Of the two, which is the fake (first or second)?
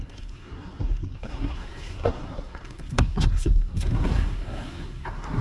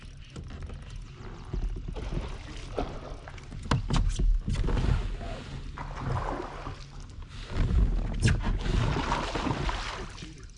first